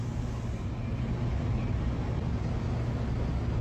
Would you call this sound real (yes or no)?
yes